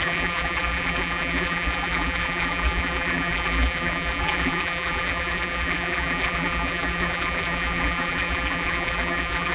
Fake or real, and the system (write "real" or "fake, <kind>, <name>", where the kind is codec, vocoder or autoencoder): fake, vocoder, BigVGAN v2